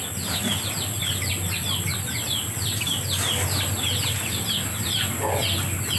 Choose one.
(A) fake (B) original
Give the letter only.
B